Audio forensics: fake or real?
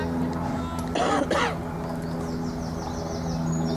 real